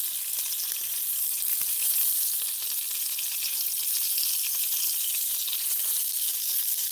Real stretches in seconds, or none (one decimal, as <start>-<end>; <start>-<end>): 0.0-6.0